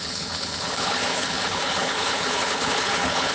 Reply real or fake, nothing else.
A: fake